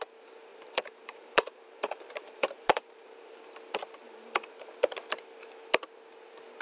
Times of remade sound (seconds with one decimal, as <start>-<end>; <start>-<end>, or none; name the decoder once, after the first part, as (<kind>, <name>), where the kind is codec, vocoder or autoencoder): 0.5-3.3 (vocoder, BigVGAN v2); 4.0-4.7